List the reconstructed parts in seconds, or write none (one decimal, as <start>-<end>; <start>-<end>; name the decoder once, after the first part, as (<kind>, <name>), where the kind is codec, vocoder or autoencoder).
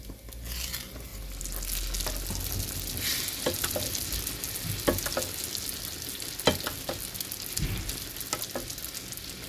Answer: none